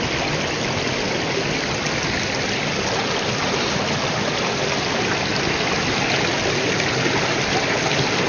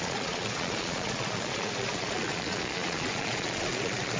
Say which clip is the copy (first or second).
second